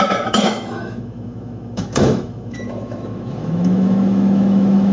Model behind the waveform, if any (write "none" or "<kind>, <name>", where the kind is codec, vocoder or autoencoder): autoencoder, DAC-VAE